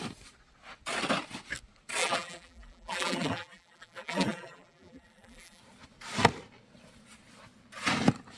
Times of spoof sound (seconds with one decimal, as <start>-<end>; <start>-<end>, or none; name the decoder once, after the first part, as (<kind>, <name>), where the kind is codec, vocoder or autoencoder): 2.0-5.6 (vocoder, BigVGAN v2)